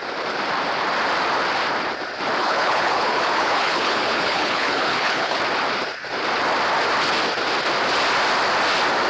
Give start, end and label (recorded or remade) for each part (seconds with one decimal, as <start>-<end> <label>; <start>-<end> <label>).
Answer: 0.0-2.4 recorded; 2.4-5.4 remade; 5.4-9.1 recorded